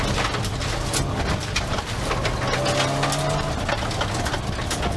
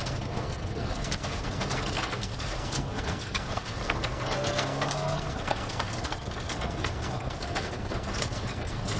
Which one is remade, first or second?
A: second